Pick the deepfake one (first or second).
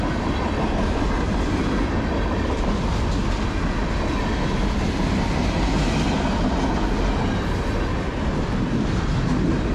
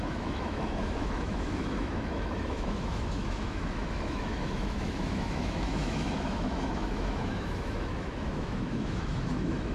second